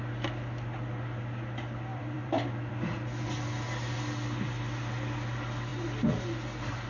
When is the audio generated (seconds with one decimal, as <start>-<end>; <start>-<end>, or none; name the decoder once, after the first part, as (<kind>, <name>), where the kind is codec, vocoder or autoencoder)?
1.9-2.7 (vocoder, BigVGAN v2)